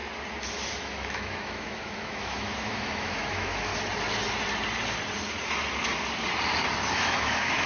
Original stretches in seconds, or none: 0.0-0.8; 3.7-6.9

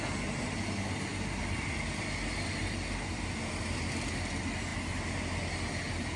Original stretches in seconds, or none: 0.0-6.2